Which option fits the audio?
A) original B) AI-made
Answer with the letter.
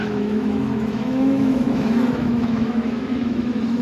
B